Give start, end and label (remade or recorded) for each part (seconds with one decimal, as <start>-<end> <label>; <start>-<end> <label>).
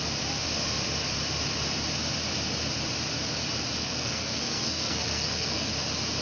0.0-3.8 recorded; 3.8-5.7 remade; 5.7-6.2 recorded